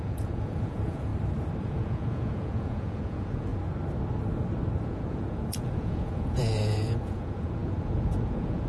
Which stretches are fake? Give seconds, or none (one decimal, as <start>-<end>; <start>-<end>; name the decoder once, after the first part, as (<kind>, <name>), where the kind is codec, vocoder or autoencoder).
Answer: 0.0-1.1 (vocoder, Vocos); 1.6-3.5; 4.8-8.7